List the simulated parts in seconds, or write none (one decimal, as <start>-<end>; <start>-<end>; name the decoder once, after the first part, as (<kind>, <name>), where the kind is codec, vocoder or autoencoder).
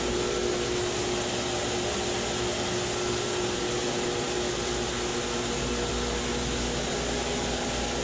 none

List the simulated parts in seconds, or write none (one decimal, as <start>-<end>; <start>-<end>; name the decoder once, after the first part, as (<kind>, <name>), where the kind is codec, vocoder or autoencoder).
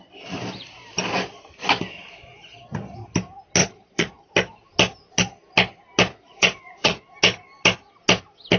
3.6-4.3 (vocoder, Vocos); 6.1-7.0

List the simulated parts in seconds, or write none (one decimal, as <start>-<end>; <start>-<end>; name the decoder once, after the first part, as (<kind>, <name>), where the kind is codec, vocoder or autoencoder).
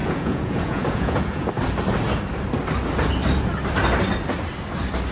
0.0-1.5 (vocoder, Vocos)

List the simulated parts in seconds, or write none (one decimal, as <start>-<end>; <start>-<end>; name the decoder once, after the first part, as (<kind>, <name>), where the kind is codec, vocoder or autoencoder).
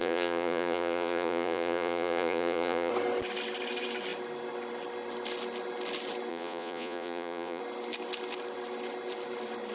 0.0-2.9 (vocoder, Vocos); 6.3-7.6